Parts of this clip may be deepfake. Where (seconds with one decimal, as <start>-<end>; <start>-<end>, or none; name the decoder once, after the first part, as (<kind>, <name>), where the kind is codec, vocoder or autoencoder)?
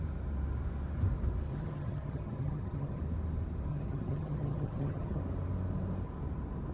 1.5-3.0 (vocoder, HiFi-GAN); 3.7-5.2